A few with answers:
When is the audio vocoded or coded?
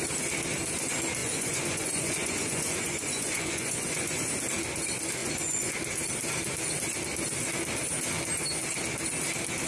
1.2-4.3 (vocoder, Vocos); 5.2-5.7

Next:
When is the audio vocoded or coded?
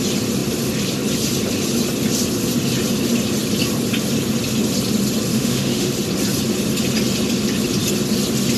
5.3-5.9 (autoencoder, DAC-VAE)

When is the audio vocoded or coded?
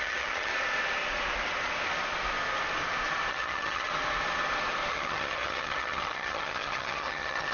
0.0-0.5 (vocoder, HiFi-GAN); 3.3-3.9; 4.9-7.5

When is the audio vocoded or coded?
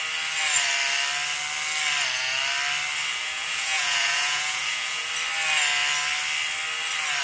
3.1-5.1 (vocoder, Vocos)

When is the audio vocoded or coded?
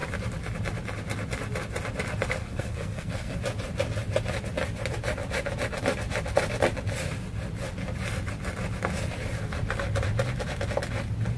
2.4-3.4 (codec, SNAC)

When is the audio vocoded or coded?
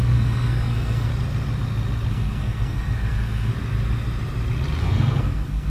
0.0-1.1 (codec, SNAC); 2.1-3.5; 4.8-5.7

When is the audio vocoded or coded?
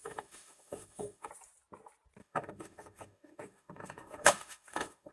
0.0-1.3 (autoencoder, DAC-VAE); 2.2-5.1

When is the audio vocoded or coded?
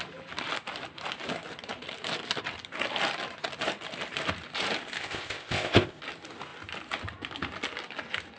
5.0-6.0 (codec, ZipCodec)